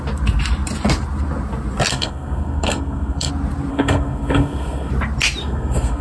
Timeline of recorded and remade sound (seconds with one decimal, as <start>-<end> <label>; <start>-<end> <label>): 0.0-1.9 recorded; 1.9-3.3 remade; 3.3-3.7 recorded; 3.7-4.9 remade; 4.9-5.4 recorded; 5.4-6.0 remade